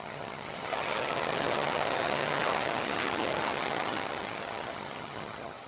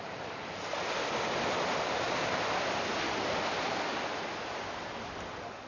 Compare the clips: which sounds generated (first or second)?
first